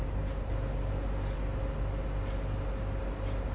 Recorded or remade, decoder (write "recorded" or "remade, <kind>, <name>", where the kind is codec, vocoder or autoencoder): recorded